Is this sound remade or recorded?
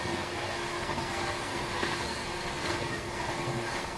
remade